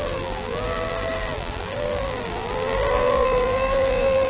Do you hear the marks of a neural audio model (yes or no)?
yes